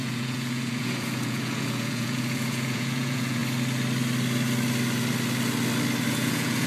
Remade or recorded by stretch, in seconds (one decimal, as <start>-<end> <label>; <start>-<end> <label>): 0.0-3.4 remade; 3.4-6.1 recorded; 6.1-6.7 remade